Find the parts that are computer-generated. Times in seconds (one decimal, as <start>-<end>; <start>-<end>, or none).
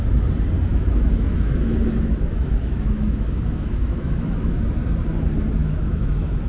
0.7-4.6; 5.6-6.5